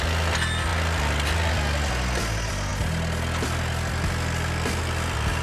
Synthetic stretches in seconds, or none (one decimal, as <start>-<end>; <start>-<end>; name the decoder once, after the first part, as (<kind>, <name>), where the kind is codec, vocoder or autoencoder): none